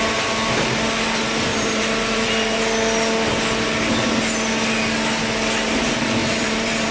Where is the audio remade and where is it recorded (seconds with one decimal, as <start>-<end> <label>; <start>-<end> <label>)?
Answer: 0.0-1.5 recorded; 1.5-2.6 remade; 2.6-6.2 recorded; 6.2-6.9 remade